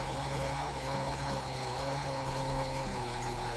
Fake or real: fake